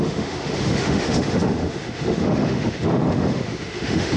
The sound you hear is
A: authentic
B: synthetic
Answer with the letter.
B